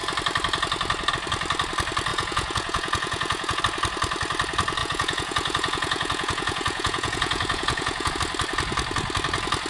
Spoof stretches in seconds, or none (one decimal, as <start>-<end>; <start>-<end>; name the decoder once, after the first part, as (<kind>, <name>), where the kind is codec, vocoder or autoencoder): 2.1-3.6 (vocoder, Vocos); 4.8-8.1